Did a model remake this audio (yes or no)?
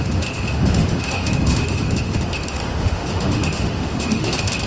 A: yes